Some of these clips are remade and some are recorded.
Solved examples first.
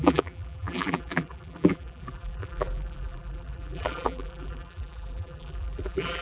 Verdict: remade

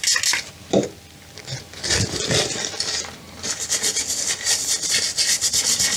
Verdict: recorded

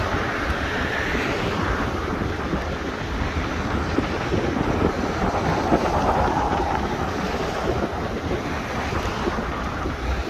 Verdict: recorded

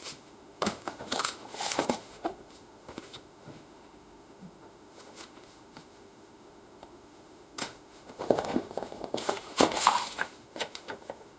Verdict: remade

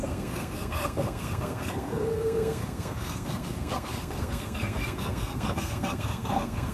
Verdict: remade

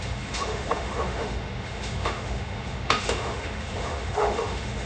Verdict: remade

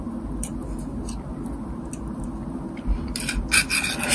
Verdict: recorded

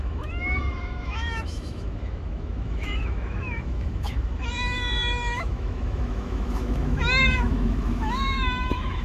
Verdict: remade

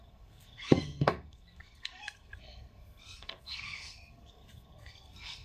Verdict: remade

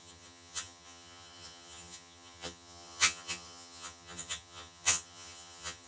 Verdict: remade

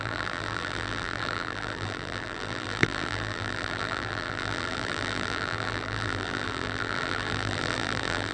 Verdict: remade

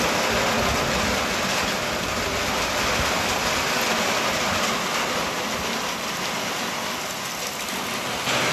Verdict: recorded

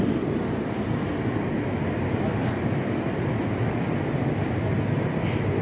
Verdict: recorded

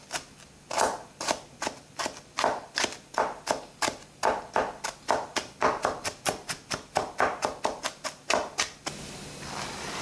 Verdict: recorded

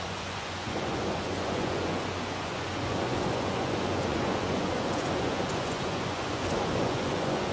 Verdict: remade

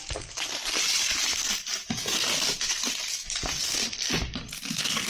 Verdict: recorded